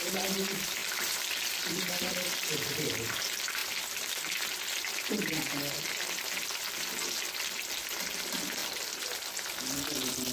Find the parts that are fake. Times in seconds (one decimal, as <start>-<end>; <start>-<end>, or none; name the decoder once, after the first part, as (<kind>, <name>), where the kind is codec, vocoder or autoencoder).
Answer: 0.8-1.9 (vocoder, BigVGAN v2); 8.6-9.3